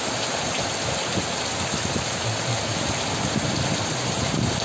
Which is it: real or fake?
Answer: real